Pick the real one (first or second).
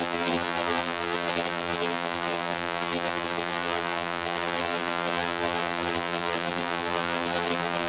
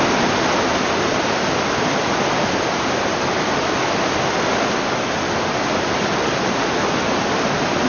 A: second